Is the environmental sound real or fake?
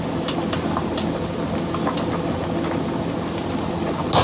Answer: real